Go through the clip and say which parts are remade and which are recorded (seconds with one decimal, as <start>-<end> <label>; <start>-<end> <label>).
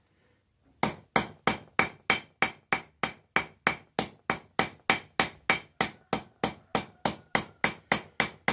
0.0-8.5 recorded